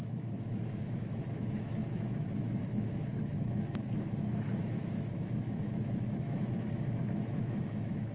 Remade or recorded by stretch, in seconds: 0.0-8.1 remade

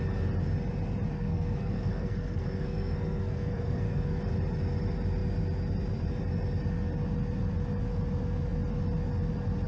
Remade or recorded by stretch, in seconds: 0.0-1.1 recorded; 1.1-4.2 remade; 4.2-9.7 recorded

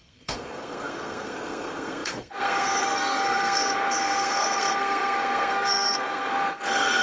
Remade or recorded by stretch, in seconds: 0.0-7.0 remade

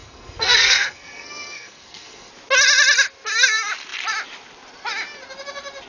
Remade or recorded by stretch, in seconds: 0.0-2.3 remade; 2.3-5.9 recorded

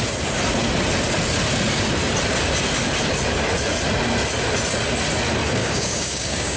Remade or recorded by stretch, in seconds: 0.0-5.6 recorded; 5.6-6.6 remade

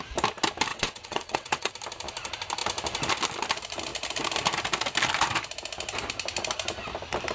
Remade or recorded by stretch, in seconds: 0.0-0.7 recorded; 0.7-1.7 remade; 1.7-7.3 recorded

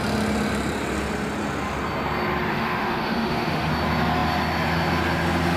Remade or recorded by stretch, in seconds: 0.0-2.5 recorded; 2.5-3.7 remade; 3.7-5.6 recorded